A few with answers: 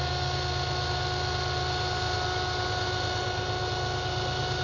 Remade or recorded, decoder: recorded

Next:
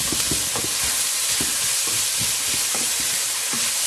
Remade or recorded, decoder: recorded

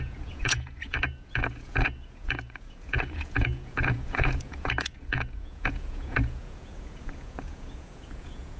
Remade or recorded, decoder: remade, vocoder, Vocos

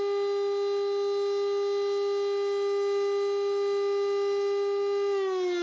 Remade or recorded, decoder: recorded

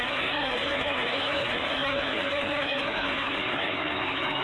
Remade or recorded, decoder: remade, codec, SNAC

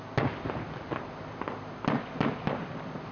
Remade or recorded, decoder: recorded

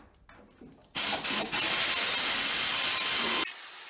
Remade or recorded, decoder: recorded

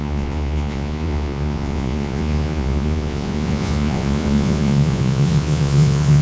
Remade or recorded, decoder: remade, vocoder, Vocos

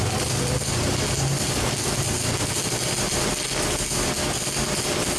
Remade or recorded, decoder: recorded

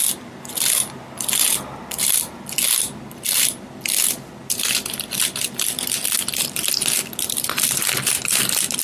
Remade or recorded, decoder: recorded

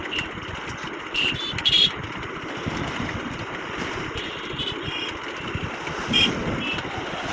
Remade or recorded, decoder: recorded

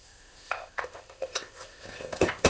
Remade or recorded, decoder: remade, codec, ZipCodec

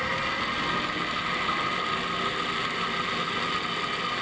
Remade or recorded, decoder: recorded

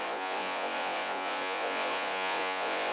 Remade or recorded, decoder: remade, vocoder, Vocos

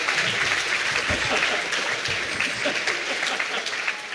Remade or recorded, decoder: recorded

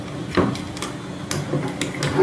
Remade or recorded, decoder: recorded